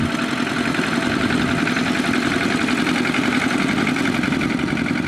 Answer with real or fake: real